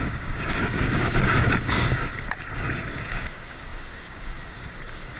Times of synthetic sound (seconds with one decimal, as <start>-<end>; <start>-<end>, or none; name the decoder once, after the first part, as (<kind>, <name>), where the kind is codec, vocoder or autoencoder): 0.0-5.2 (codec, DAC)